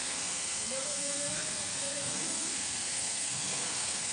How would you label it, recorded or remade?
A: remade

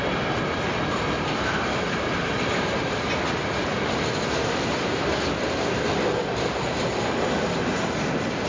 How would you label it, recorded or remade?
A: recorded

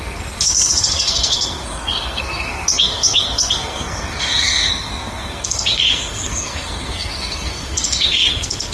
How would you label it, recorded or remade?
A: remade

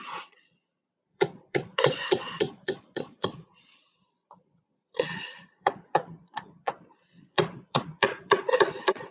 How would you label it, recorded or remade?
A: remade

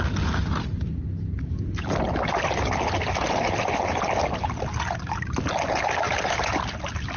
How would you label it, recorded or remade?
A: recorded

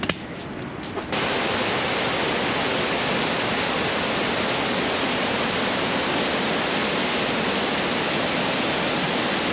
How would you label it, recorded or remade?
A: recorded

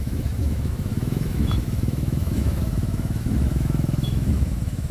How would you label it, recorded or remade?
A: remade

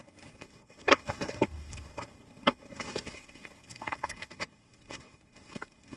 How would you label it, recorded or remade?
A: remade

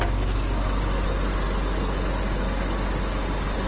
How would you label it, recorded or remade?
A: recorded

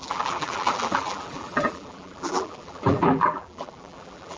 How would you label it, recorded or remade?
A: remade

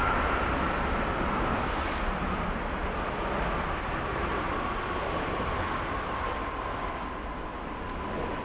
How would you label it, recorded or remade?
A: recorded